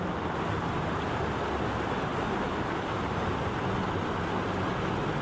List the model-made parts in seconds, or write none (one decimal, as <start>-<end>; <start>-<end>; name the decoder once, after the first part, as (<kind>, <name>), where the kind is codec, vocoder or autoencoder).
none